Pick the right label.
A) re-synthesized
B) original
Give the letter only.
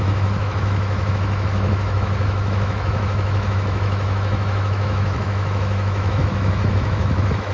A